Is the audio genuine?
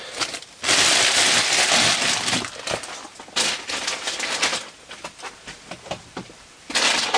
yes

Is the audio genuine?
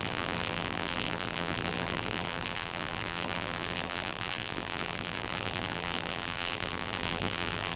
no